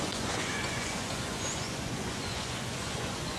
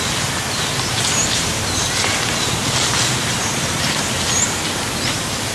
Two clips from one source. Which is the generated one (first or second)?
first